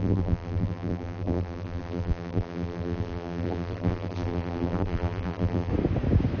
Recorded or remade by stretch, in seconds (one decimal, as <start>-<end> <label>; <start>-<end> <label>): 0.0-5.7 remade; 5.7-6.4 recorded